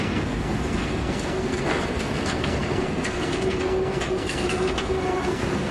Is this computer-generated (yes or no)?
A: yes